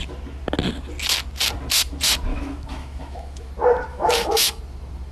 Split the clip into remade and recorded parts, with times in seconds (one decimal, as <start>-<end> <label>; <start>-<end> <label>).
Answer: 0.0-2.3 recorded; 2.3-3.5 remade; 3.5-3.9 recorded; 3.9-4.6 remade; 4.6-5.1 recorded

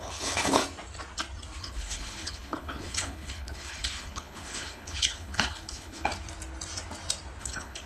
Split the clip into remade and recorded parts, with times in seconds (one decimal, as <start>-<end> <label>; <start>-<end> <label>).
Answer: 0.0-0.6 remade; 0.6-1.6 recorded; 1.6-6.1 remade; 6.1-7.4 recorded; 7.4-7.9 remade

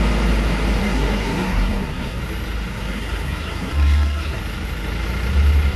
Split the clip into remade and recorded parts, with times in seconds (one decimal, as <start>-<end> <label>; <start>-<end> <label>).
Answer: 0.0-0.8 recorded; 0.8-2.2 remade; 2.2-2.7 recorded; 2.7-4.4 remade; 4.4-5.8 recorded